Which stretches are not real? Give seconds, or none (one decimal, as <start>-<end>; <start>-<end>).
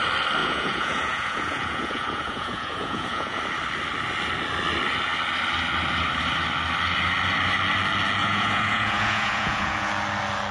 0.4-3.4; 8.2-9.9